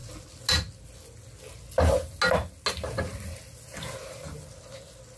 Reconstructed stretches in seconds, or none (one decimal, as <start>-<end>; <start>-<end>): none

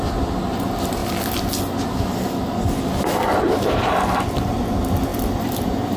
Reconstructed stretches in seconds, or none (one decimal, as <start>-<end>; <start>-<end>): 5.1-6.0

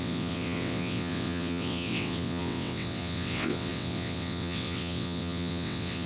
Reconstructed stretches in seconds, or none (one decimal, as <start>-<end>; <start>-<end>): 0.0-6.1

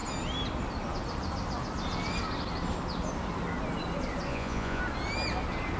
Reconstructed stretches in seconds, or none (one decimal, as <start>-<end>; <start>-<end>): 4.3-4.8

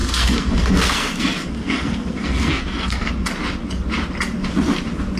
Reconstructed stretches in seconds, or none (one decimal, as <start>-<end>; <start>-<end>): 0.0-3.1

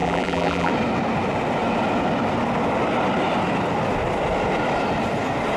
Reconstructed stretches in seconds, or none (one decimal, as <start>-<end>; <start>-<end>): 0.0-0.7

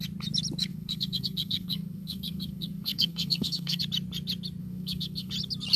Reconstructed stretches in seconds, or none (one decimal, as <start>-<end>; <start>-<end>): 0.7-3.8; 4.6-5.3